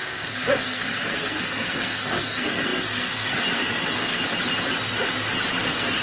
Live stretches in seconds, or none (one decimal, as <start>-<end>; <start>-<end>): 4.2-5.6